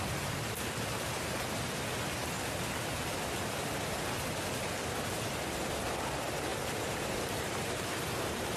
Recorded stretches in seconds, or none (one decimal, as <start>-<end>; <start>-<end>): 0.0-6.5; 8.0-8.6